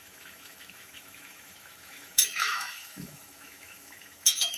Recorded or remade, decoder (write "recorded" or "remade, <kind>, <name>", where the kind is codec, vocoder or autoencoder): remade, autoencoder, DAC-VAE